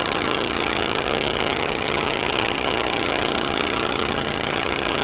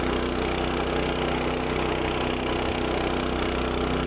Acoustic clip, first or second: second